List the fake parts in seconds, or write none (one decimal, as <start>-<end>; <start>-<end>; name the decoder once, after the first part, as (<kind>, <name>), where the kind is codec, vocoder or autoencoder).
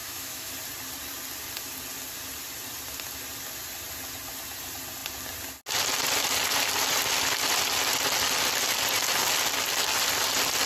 0.0-0.5 (autoencoder, DAC-VAE)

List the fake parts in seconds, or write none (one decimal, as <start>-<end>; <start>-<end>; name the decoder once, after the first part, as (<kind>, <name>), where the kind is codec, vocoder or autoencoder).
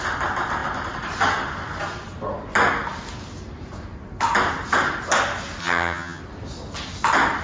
5.6-6.2 (vocoder, HiFi-GAN)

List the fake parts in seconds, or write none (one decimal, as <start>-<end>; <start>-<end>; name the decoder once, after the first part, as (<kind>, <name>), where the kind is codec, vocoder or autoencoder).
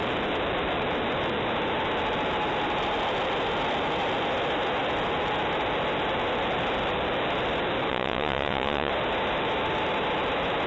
7.9-8.9 (vocoder, Vocos)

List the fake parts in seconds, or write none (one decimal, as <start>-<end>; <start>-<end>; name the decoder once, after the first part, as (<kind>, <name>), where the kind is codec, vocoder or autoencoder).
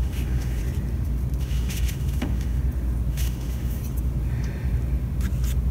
0.0-0.6 (autoencoder, DAC-VAE); 1.4-2.6; 3.1-3.8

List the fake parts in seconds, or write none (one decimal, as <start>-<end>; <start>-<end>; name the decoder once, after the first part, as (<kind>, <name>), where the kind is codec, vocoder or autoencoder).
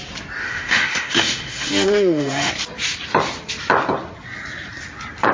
0.4-2.5 (autoencoder, DAC-VAE)